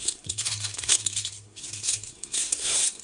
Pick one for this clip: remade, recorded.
remade